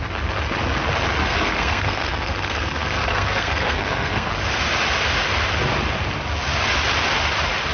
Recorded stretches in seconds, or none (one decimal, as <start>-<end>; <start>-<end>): 0.0-1.2; 4.3-7.7

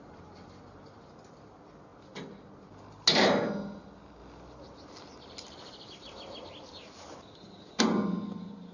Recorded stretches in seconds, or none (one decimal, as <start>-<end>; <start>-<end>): 0.0-8.7

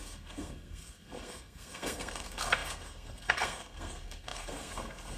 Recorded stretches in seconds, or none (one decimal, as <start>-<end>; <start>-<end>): none

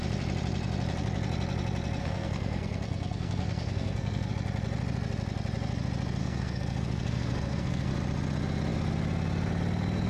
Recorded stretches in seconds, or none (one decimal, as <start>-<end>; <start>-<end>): 0.0-2.0; 4.3-6.2; 7.9-10.1

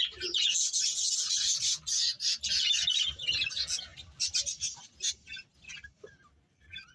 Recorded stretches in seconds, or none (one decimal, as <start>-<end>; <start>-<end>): 0.0-6.9